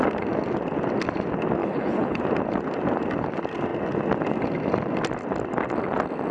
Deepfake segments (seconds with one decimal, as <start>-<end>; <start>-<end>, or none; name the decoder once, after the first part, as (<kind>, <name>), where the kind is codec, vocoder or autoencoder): 1.6-2.2 (codec, HILCodec)